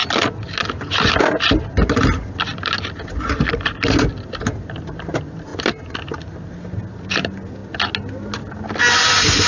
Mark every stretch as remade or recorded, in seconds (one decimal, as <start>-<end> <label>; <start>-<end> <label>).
0.0-9.5 recorded